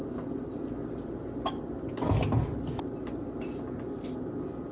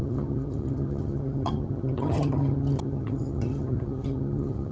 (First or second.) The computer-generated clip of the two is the second